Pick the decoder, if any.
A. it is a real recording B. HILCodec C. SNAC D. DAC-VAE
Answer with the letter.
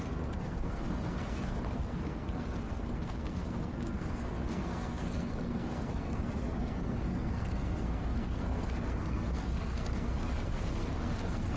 C